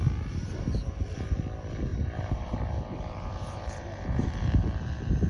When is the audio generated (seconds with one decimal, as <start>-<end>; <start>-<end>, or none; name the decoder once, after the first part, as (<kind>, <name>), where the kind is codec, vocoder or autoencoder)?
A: 1.9-4.5 (vocoder, BigVGAN v2)